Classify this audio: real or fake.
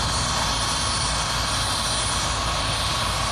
real